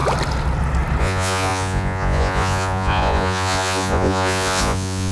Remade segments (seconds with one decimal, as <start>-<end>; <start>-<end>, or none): 1.0-5.1